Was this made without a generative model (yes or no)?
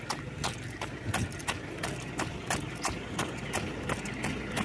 yes